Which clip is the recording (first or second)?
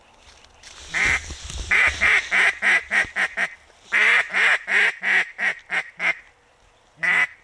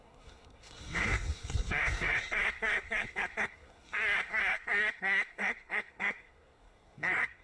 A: first